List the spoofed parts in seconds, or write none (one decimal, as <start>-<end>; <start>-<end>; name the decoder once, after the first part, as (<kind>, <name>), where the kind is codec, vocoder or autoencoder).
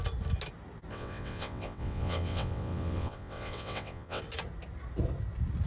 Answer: 0.9-4.2 (vocoder, WaveNeXt)